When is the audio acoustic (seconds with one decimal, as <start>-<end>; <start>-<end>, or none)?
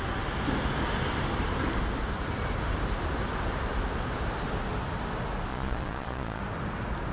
0.0-5.5; 6.4-7.1